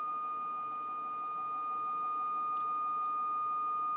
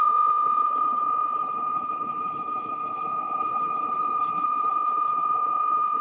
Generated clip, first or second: second